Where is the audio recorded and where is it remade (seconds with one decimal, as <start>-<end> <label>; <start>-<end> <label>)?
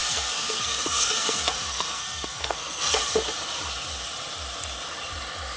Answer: 0.0-3.0 remade; 3.0-5.6 recorded